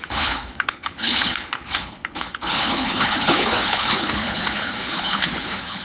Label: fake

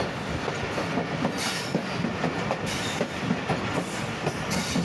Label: real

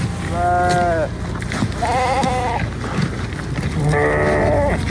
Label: real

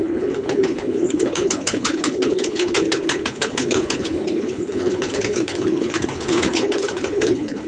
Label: fake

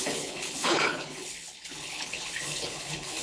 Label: fake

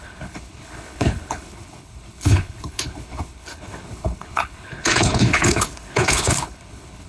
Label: fake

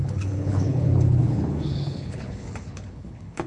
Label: fake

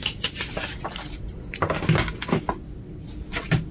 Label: real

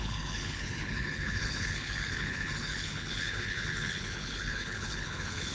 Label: fake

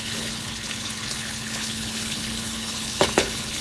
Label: fake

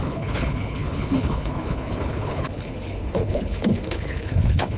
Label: fake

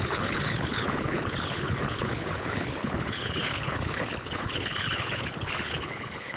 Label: fake